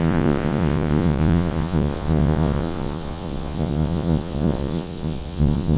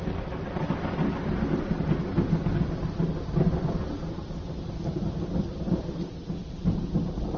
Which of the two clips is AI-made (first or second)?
first